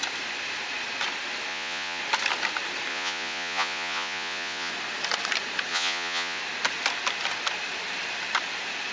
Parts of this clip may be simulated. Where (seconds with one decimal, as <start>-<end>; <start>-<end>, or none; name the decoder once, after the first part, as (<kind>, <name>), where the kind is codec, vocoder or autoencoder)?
1.5-2.0 (vocoder, Vocos); 2.9-4.7; 5.7-6.4